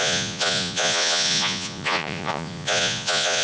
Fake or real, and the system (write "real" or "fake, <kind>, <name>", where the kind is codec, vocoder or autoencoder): fake, vocoder, Vocos